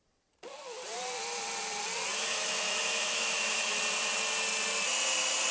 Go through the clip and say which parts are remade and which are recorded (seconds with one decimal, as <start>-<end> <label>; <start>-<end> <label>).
0.0-2.2 recorded; 2.2-3.8 remade; 3.8-5.5 recorded